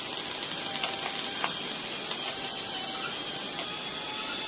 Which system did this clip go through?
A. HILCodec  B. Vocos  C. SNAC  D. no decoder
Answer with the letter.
D